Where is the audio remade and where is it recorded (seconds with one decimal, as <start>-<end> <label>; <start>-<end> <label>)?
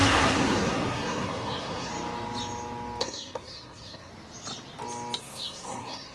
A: 0.0-1.9 remade; 1.9-3.0 recorded; 3.0-4.1 remade; 4.1-5.2 recorded; 5.2-6.1 remade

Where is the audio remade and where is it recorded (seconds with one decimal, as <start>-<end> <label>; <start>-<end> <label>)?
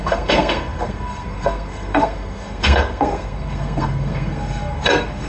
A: 0.0-5.3 remade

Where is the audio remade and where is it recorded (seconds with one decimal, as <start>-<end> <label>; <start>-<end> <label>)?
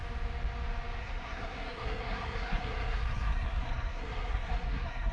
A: 0.0-1.0 recorded; 1.0-5.1 remade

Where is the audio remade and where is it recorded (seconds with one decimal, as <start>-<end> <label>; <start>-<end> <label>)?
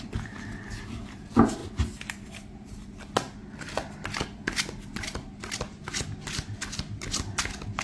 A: 0.0-7.8 recorded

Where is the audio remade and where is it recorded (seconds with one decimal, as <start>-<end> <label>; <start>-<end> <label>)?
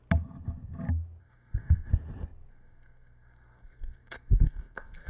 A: 0.0-1.2 recorded; 1.2-1.9 remade; 1.9-2.5 recorded; 2.5-5.1 remade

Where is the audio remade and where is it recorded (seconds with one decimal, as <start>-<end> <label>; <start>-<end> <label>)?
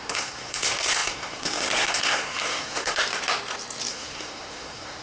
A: 0.0-3.0 remade; 3.0-3.9 recorded; 3.9-5.0 remade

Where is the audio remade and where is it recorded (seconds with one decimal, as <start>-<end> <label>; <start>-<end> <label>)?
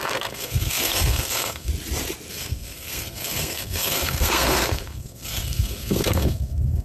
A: 0.0-1.7 remade; 1.7-2.3 recorded; 2.3-6.8 remade